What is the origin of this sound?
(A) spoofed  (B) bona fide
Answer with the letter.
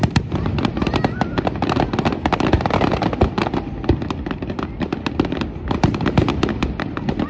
B